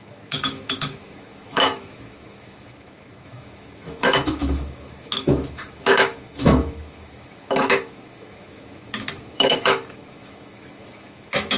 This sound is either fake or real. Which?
fake